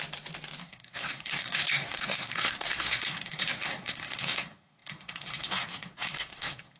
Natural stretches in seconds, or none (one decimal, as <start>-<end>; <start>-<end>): 0.0-0.6